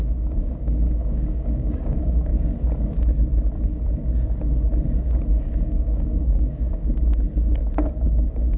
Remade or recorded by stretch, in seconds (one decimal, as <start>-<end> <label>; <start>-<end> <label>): 0.0-2.3 remade; 2.3-5.6 recorded; 5.6-6.8 remade; 6.8-7.9 recorded; 7.9-8.6 remade